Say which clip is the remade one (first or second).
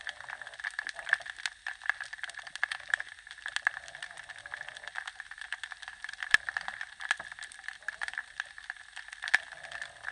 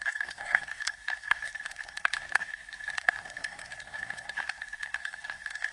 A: second